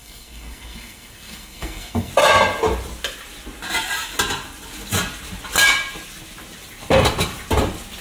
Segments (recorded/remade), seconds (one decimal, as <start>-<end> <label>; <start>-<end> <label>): 0.0-2.1 remade; 2.1-8.0 recorded